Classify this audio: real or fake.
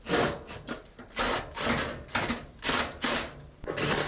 real